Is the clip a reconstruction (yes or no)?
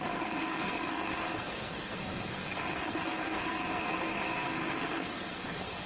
yes